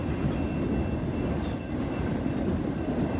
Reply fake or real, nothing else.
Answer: real